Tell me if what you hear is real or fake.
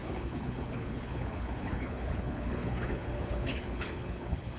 fake